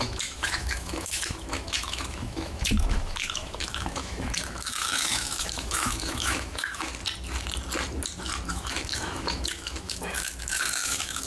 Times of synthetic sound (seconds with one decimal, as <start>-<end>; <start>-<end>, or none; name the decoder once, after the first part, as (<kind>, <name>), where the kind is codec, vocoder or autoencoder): 0.0-6.9 (autoencoder, DAC-VAE); 8.5-11.3